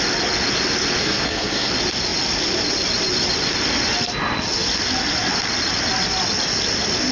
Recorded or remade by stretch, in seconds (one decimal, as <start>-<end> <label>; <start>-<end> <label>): 0.0-1.0 recorded; 1.0-1.7 remade; 1.7-7.1 recorded